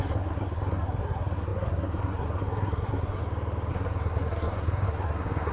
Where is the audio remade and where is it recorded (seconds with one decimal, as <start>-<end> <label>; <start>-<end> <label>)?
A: 0.0-3.2 remade; 3.2-3.7 recorded; 3.7-5.5 remade